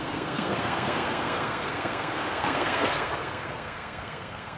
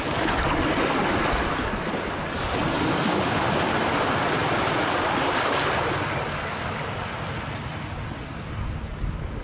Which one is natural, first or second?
second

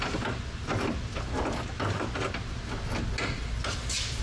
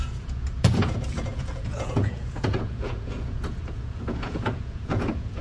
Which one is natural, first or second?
first